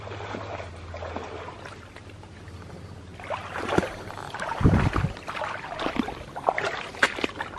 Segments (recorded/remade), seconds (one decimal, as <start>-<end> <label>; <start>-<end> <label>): 0.0-7.6 recorded